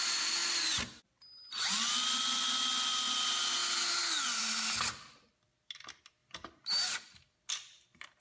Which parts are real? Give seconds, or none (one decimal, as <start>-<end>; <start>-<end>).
0.0-8.2